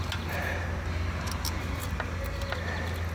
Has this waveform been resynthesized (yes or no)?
no